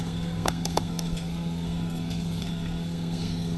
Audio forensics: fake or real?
fake